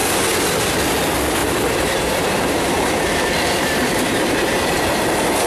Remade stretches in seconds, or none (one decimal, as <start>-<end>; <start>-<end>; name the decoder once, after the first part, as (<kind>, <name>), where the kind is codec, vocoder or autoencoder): 1.4-4.7 (vocoder, BigVGAN v2)